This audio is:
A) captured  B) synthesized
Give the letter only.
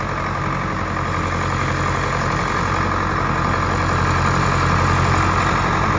A